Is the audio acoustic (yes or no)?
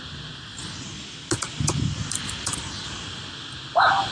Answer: yes